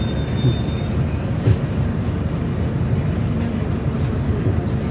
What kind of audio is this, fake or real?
real